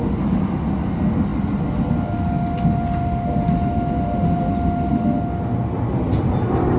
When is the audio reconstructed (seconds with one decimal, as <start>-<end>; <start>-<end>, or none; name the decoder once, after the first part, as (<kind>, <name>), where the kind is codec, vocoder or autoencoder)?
none